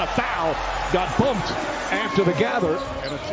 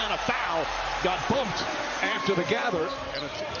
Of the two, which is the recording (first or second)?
first